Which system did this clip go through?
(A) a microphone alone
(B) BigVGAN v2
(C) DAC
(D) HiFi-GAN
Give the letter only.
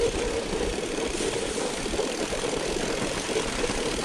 A